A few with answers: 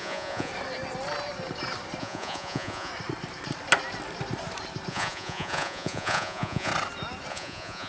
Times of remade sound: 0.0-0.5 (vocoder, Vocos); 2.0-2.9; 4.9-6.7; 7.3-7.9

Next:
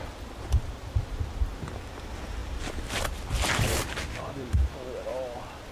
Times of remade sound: none